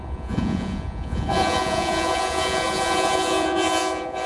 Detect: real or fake fake